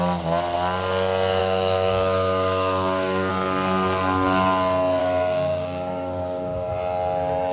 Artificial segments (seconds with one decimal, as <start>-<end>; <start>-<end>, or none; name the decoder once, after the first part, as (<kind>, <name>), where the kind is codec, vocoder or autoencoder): 1.4-3.3 (codec, DAC); 5.0-6.7